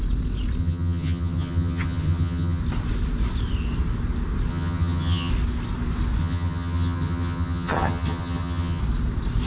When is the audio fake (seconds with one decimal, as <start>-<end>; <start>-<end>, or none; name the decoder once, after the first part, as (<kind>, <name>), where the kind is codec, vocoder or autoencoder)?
0.6-2.6 (vocoder, HiFi-GAN); 4.5-5.3; 6.2-8.8